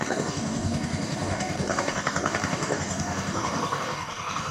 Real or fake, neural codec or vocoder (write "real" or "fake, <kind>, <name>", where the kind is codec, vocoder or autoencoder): fake, codec, DAC